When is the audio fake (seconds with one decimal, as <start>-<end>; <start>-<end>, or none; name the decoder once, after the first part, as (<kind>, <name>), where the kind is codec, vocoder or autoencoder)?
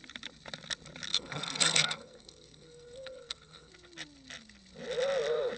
1.1-3.7 (codec, SNAC)